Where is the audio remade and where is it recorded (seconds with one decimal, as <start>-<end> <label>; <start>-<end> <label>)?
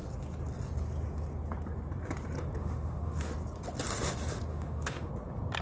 0.0-2.6 recorded; 2.6-3.3 remade; 3.3-4.5 recorded; 4.5-5.1 remade; 5.1-5.6 recorded